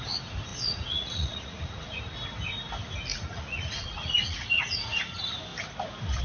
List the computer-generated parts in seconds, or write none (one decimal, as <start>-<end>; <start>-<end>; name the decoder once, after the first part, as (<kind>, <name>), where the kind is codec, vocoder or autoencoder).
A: 0.5-2.0 (vocoder, Vocos); 3.1-5.0